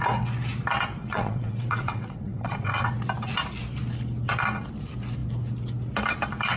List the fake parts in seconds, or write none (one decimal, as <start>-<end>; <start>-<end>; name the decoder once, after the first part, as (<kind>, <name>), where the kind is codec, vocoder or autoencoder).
1.0-2.9 (vocoder, WaveNeXt)